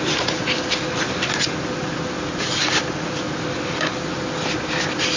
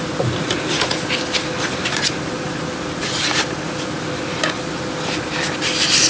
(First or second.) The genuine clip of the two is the first